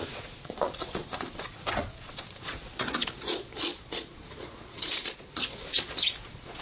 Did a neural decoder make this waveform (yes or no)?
yes